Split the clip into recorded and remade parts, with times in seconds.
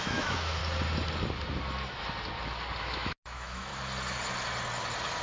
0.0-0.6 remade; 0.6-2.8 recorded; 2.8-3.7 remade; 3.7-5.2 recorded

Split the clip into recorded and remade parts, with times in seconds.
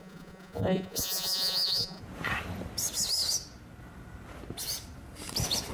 0.0-2.0 remade; 2.0-5.7 recorded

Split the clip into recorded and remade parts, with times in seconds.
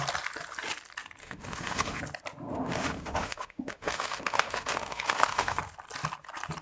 0.0-1.2 recorded; 1.2-2.0 remade; 2.0-2.5 recorded; 2.5-5.6 remade; 5.6-6.6 recorded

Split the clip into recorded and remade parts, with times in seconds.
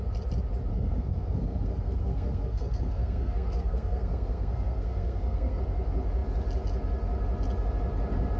0.0-0.7 recorded; 0.7-5.6 remade; 5.6-8.4 recorded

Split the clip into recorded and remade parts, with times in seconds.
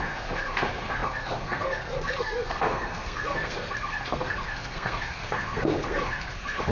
0.0-6.7 remade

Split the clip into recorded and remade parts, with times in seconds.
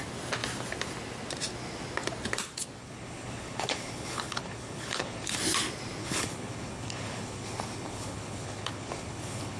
0.0-2.8 recorded; 2.8-5.4 remade; 5.4-6.0 recorded; 6.0-9.6 remade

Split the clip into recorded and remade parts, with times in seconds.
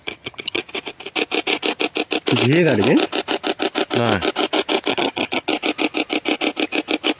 0.0-0.6 remade; 0.6-4.9 recorded; 4.9-5.5 remade; 5.5-7.2 recorded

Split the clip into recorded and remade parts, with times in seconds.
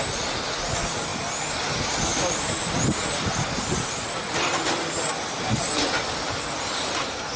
0.0-7.4 recorded